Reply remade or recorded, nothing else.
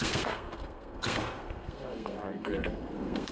remade